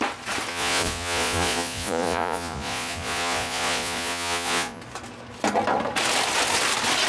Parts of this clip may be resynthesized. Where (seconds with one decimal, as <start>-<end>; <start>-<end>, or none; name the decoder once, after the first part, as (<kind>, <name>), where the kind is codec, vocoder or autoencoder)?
0.5-4.8 (vocoder, Vocos)